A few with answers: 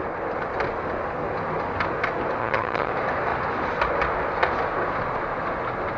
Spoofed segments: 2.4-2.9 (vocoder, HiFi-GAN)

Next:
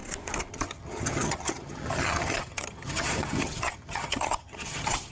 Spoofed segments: 0.5-5.1 (vocoder, HiFi-GAN)